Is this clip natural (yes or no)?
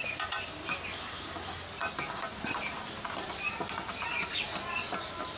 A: yes